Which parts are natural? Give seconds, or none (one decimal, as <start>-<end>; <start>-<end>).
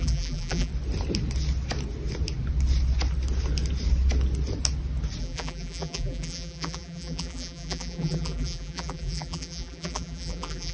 0.7-5.2